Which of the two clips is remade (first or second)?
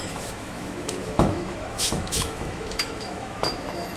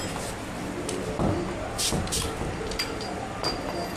first